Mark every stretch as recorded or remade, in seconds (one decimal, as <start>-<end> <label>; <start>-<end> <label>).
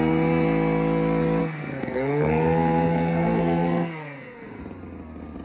0.0-1.4 recorded; 1.4-4.6 remade; 4.6-5.4 recorded